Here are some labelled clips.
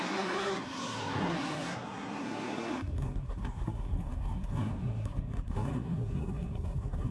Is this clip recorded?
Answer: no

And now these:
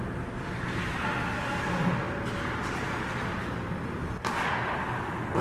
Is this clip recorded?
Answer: yes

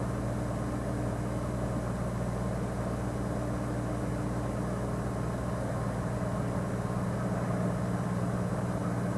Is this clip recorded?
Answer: yes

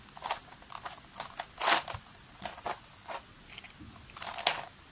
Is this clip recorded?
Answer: yes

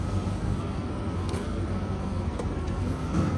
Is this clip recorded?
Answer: no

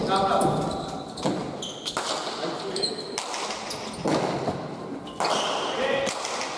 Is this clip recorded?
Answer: yes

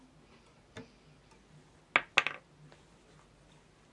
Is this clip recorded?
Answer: yes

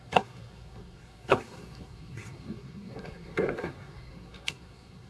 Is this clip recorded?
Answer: no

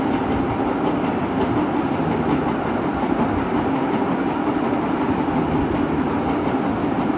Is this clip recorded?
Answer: yes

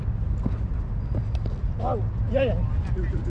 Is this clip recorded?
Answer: yes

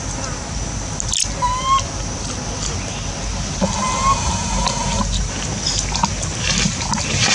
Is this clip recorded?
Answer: yes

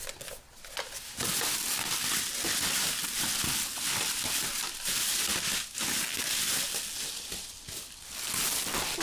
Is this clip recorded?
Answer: yes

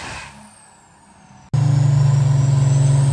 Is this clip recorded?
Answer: yes